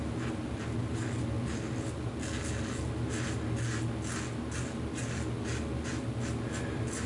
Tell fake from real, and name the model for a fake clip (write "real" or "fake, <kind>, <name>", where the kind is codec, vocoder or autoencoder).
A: real